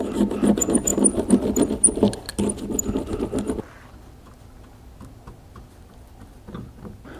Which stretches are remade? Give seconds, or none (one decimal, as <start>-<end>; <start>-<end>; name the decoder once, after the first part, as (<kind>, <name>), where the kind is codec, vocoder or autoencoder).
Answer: none